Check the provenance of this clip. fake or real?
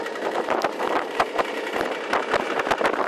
real